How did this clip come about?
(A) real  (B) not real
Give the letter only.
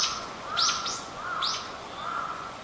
B